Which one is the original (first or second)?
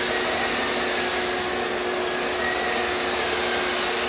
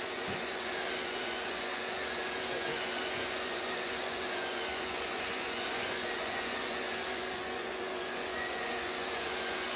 first